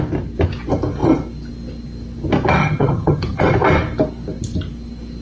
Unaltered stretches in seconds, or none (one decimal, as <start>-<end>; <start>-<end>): 0.0-2.6; 3.4-5.2